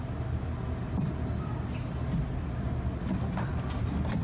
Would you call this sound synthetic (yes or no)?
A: no